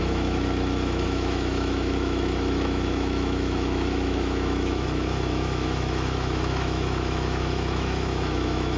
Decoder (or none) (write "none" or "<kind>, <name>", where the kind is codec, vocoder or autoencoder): autoencoder, DAC-VAE